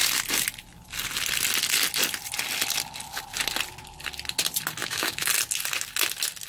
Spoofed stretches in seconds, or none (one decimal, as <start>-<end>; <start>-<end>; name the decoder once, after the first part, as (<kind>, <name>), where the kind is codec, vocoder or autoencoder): 4.8-5.3 (autoencoder, DAC-VAE)